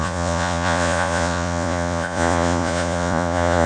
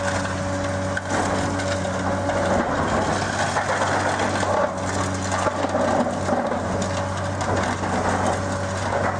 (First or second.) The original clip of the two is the second